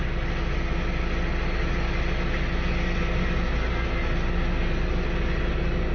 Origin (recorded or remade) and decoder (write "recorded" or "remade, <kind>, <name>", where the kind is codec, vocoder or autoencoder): recorded